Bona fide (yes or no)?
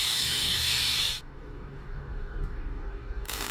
no